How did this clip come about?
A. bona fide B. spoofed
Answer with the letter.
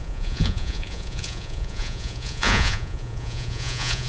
B